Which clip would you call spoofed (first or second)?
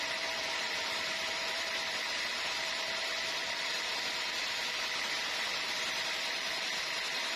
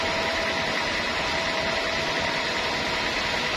first